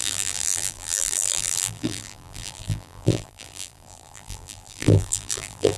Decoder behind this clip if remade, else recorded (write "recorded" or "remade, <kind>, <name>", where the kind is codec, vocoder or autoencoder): remade, vocoder, BigVGAN v2